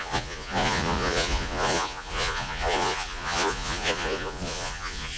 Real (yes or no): no